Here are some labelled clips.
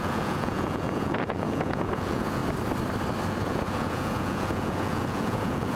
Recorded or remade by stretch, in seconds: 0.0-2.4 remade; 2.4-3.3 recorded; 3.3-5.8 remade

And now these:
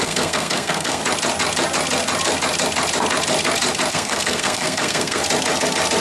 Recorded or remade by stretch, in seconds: 0.0-1.0 remade; 1.0-3.9 recorded; 3.9-5.2 remade; 5.2-6.0 recorded

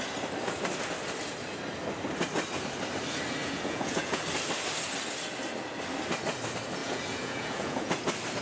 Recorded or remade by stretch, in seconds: 0.0-3.4 recorded; 3.4-4.2 remade; 4.2-6.8 recorded; 6.8-7.9 remade; 7.9-8.4 recorded

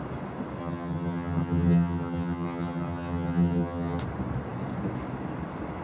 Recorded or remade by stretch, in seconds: 0.0-0.6 recorded; 0.6-4.0 remade; 4.0-5.8 recorded